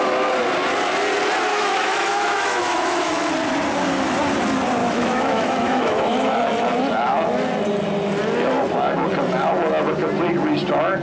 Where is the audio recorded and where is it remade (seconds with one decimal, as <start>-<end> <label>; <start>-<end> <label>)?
0.0-1.5 recorded; 1.5-3.3 remade; 3.3-4.8 recorded; 4.8-6.4 remade; 6.4-11.0 recorded